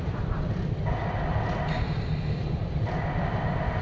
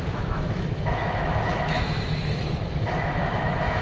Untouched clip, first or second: first